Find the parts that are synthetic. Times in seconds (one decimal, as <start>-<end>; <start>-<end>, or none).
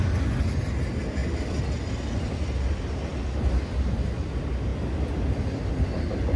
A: none